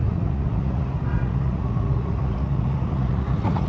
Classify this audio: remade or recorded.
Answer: remade